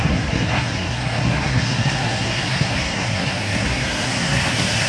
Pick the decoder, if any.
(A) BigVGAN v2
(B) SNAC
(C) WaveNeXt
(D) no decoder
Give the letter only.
B